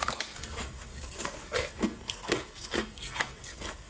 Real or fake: fake